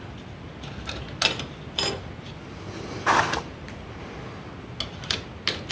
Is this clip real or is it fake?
real